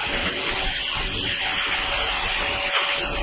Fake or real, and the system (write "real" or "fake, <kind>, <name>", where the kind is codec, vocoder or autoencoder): real